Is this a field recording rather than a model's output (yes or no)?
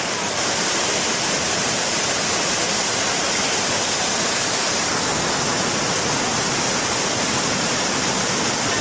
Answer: yes